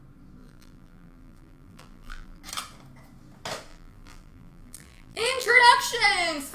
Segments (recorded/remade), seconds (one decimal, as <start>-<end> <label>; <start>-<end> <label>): 0.0-0.4 recorded; 0.4-2.4 remade; 2.4-3.7 recorded; 3.7-5.6 remade; 5.6-6.5 recorded